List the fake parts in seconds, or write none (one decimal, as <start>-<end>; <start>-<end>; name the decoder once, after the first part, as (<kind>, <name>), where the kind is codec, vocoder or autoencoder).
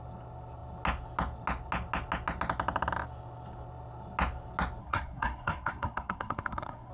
4.8-6.9 (codec, SNAC)